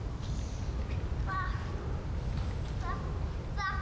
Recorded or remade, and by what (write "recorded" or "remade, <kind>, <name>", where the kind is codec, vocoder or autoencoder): recorded